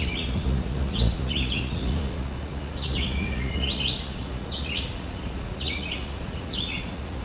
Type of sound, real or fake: fake